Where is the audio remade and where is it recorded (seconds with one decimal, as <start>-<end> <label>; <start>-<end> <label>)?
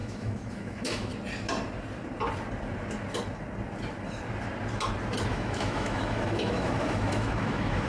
0.0-1.1 remade; 1.1-5.3 recorded; 5.3-7.9 remade